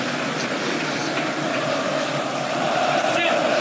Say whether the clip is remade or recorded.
recorded